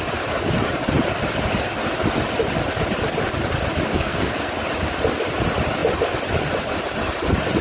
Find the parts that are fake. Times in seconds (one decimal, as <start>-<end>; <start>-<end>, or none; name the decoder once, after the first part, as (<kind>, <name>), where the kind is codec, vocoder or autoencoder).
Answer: 3.9-4.5 (codec, SNAC)